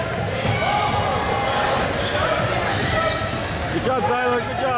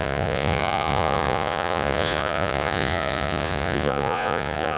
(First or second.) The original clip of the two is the first